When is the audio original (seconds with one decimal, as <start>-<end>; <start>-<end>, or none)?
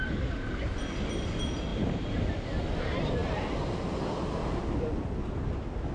0.0-1.7; 2.2-5.9